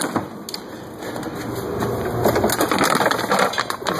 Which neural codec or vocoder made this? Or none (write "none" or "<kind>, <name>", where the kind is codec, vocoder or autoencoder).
none